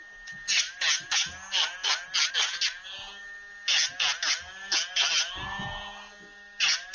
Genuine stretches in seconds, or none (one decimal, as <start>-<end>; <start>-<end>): 0.0-6.9